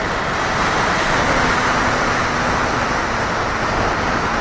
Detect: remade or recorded recorded